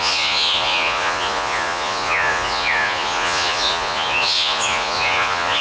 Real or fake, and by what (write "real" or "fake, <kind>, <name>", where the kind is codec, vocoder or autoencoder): fake, vocoder, Vocos